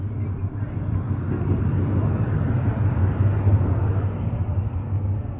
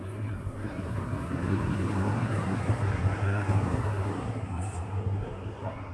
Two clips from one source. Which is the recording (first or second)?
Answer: first